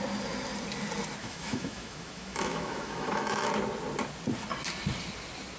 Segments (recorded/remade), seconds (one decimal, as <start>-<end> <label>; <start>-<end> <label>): 0.0-1.2 recorded; 1.2-3.5 remade; 3.5-5.6 recorded